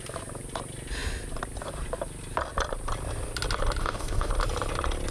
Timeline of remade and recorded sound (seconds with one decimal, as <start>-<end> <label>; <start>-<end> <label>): 0.0-3.8 recorded; 3.8-4.3 remade; 4.3-5.1 recorded